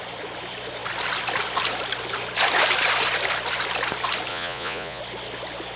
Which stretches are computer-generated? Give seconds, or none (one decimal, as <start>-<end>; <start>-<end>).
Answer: 4.3-5.0